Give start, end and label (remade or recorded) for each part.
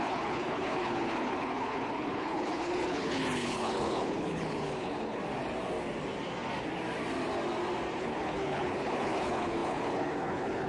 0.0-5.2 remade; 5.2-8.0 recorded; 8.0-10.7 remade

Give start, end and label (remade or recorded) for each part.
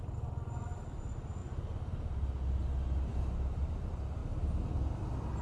0.0-5.4 recorded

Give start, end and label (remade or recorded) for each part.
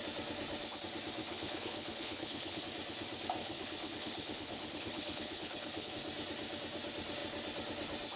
0.0-1.2 recorded; 1.2-2.6 remade; 2.6-3.4 recorded; 3.4-5.9 remade; 5.9-8.2 recorded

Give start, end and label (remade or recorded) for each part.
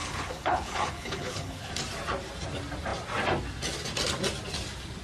0.0-1.7 remade; 1.7-5.0 recorded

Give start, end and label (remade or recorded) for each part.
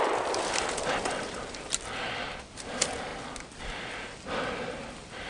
0.0-5.3 recorded